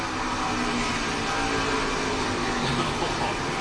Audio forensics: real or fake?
real